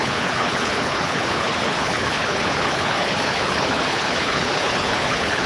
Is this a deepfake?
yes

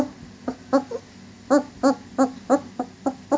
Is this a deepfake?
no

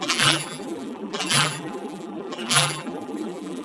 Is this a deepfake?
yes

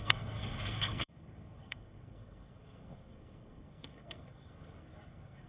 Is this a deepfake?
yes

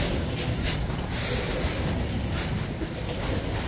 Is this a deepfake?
no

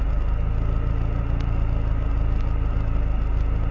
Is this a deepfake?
no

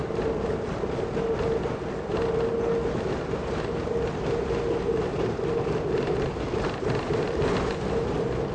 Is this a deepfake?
no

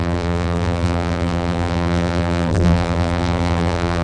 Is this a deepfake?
yes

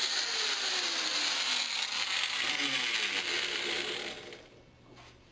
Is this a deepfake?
no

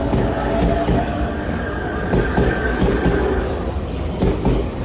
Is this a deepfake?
yes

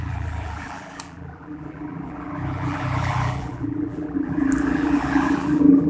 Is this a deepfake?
yes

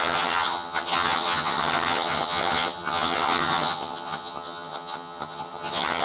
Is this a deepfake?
yes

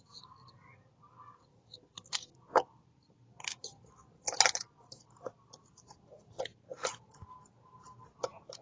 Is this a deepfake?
no